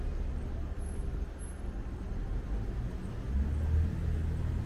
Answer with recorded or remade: recorded